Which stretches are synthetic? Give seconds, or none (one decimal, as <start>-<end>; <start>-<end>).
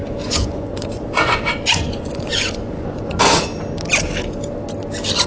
0.0-3.2